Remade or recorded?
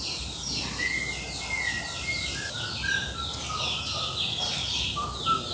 recorded